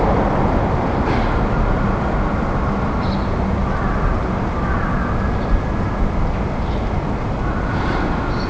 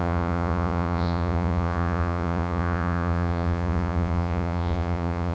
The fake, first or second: second